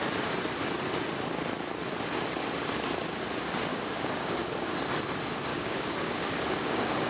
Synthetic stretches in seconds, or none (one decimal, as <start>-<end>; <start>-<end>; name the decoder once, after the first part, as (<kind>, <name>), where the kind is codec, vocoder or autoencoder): 3.7-4.7 (codec, DAC); 5.5-7.1